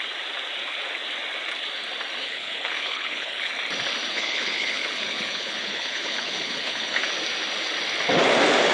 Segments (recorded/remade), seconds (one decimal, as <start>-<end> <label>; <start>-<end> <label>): 0.0-2.2 recorded; 2.2-3.5 remade; 3.5-4.1 recorded; 4.1-7.1 remade; 7.1-8.7 recorded